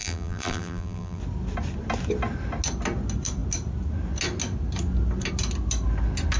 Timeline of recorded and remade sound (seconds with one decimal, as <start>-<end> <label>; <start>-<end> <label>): 0.0-1.2 remade; 1.2-6.4 recorded